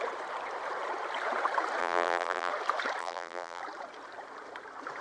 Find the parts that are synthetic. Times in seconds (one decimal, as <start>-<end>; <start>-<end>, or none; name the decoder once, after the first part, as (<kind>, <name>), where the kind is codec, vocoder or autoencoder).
1.8-2.5 (vocoder, BigVGAN v2); 3.0-3.6